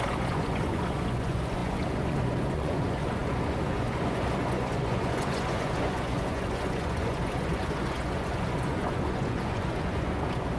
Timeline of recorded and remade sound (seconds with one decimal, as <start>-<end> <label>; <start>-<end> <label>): 0.0-10.6 remade